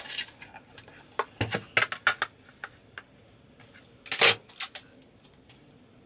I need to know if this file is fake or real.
real